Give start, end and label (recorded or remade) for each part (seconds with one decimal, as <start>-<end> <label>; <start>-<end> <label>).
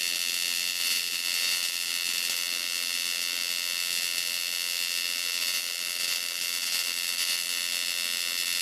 0.0-0.7 recorded; 0.7-1.9 remade; 1.9-5.4 recorded; 5.4-7.5 remade; 7.5-8.6 recorded